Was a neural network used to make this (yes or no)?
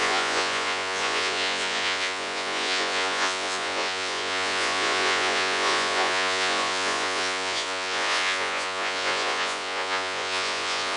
yes